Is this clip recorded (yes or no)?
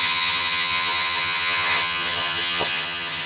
no